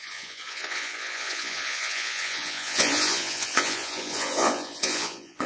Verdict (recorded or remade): remade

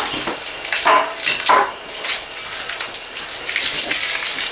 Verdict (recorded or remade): recorded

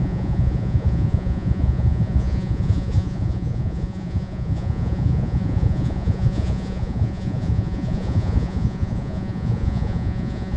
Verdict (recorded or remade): remade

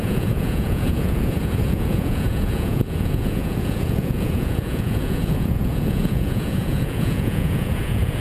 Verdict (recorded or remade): remade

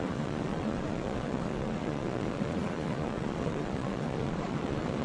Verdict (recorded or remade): remade